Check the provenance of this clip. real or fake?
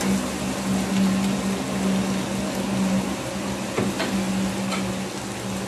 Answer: real